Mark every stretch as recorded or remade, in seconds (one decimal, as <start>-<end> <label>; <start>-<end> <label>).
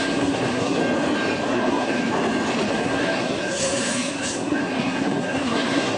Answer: 0.0-0.8 remade; 0.8-1.5 recorded; 1.5-2.0 remade; 2.0-2.7 recorded; 2.7-6.0 remade